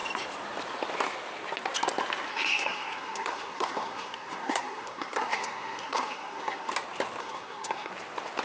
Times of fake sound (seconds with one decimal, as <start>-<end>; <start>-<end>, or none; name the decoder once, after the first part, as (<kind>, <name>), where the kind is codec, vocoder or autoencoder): 2.3-6.7 (codec, SNAC); 7.2-7.9